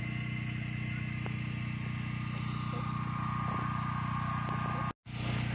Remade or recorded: recorded